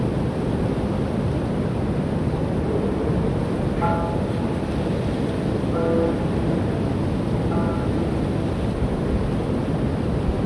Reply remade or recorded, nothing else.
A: recorded